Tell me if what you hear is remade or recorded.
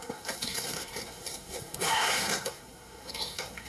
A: remade